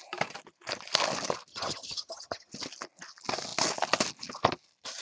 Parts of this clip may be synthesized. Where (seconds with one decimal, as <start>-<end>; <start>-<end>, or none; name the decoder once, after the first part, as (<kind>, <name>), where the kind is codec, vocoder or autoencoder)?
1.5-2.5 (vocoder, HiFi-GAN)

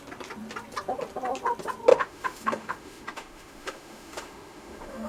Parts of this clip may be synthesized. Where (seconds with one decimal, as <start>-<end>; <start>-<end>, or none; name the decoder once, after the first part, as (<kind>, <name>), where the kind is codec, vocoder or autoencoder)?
1.9-5.1 (autoencoder, DAC-VAE)

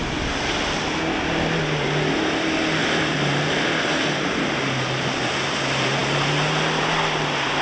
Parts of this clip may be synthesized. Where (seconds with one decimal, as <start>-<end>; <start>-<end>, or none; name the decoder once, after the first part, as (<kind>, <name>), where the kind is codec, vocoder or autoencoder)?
2.8-3.6 (vocoder, BigVGAN v2)

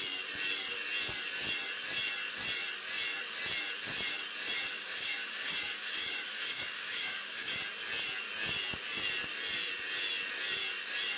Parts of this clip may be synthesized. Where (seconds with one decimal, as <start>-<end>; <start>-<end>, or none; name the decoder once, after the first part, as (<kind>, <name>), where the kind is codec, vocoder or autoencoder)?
4.7-7.5 (codec, DAC)

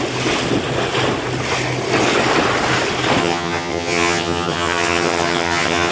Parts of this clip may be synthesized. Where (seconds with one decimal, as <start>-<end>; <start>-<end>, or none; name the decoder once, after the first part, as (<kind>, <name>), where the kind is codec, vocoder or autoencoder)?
3.2-5.9 (vocoder, HiFi-GAN)